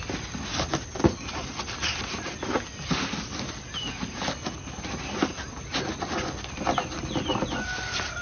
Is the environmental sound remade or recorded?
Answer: recorded